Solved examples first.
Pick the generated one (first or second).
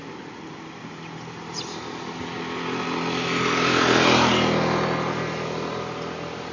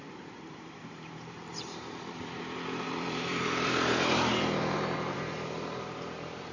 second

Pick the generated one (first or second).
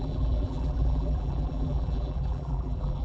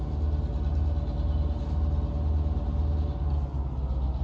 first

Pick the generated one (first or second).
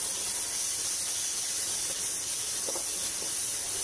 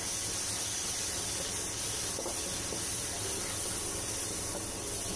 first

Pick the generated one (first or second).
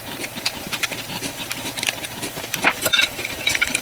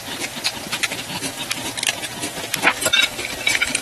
first